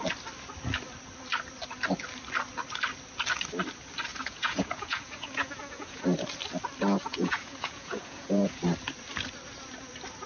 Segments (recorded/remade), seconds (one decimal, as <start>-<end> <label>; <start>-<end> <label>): 0.0-4.1 recorded; 4.1-6.0 remade; 6.0-7.1 recorded; 7.1-8.6 remade; 8.6-10.3 recorded